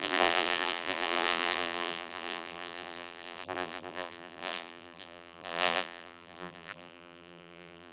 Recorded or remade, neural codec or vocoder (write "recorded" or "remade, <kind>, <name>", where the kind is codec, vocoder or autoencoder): remade, vocoder, BigVGAN v2